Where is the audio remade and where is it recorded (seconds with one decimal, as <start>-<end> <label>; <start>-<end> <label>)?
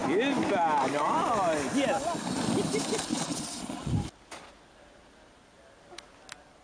0.0-3.1 recorded; 3.1-3.9 remade; 3.9-6.6 recorded